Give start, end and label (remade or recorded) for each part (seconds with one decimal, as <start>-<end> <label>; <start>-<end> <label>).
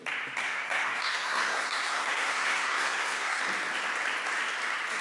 0.0-0.4 recorded; 0.4-3.4 remade; 3.4-5.0 recorded